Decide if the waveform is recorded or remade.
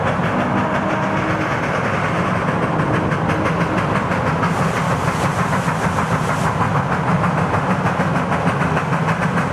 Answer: recorded